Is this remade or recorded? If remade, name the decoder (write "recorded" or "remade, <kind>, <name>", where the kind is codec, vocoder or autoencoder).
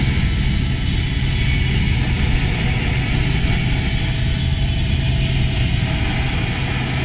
recorded